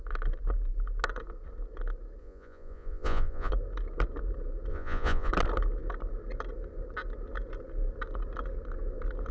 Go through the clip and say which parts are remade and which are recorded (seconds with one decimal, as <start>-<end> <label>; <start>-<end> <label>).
0.0-2.2 recorded; 2.2-3.5 remade; 3.5-4.7 recorded; 4.7-5.3 remade; 5.3-9.3 recorded